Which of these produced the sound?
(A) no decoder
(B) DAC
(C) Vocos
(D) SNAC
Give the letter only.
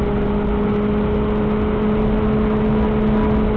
A